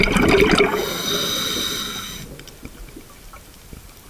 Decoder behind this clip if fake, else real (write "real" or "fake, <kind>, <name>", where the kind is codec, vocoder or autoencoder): real